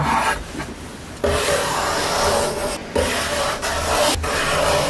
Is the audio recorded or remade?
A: recorded